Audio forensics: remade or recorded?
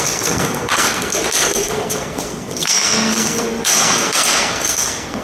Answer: remade